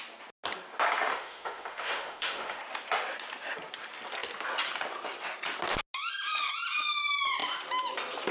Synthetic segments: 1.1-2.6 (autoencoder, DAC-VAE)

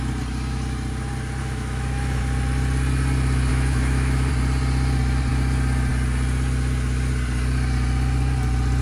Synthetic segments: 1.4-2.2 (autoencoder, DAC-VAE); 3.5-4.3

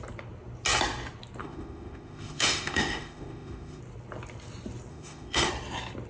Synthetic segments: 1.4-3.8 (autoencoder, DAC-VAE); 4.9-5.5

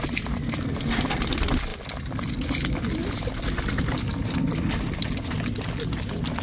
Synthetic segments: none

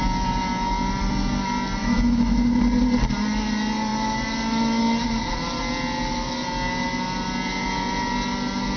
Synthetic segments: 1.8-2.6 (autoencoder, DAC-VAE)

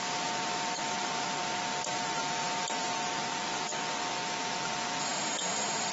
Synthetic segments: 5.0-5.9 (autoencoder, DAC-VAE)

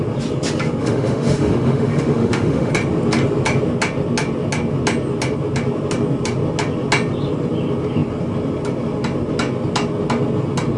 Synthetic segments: 0.8-2.7 (autoencoder, DAC-VAE)